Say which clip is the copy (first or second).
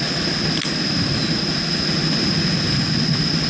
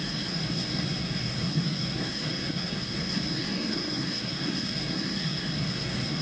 second